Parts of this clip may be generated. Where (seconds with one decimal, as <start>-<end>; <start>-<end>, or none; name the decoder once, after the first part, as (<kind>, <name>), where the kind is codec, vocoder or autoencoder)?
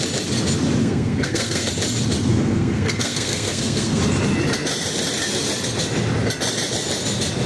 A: 0.8-1.7 (codec, SNAC); 2.3-4.0